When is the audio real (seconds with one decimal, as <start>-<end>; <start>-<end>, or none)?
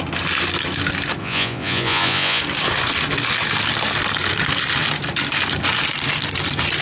0.0-1.2; 2.4-6.8